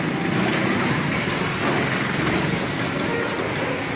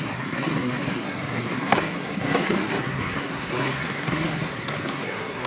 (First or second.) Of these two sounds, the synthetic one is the second